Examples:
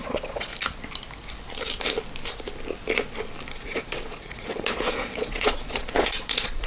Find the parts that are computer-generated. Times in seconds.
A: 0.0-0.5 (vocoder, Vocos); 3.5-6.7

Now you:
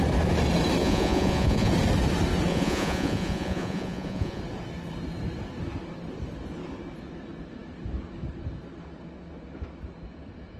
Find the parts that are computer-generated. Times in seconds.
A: 0.8-1.7 (vocoder, Vocos); 2.5-4.4

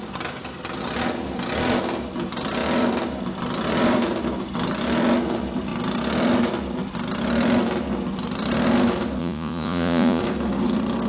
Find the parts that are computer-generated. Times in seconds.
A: 9.2-10.2 (vocoder, Vocos)

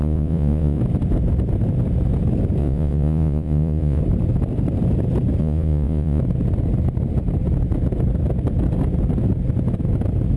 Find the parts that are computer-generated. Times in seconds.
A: 0.0-0.8 (vocoder, Vocos); 2.6-4.0; 5.4-6.2